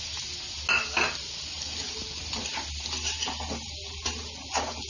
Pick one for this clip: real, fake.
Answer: real